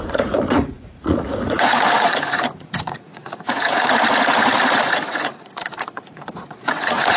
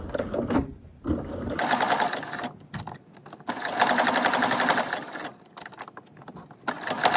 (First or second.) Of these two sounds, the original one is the second